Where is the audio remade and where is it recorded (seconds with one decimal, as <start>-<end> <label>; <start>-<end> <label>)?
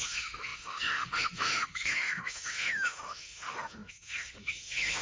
0.0-5.0 remade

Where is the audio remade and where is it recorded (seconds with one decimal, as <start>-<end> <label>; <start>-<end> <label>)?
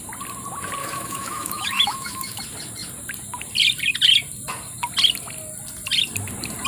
0.0-0.8 recorded; 0.8-2.4 remade; 2.4-6.7 recorded